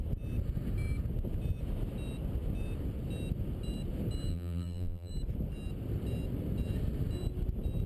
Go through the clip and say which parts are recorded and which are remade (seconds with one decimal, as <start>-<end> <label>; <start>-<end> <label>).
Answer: 0.0-4.3 recorded; 4.3-5.1 remade; 5.1-7.9 recorded